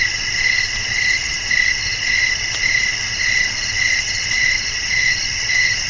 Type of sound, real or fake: real